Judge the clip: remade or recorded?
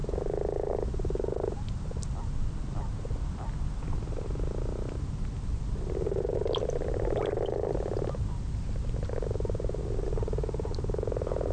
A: recorded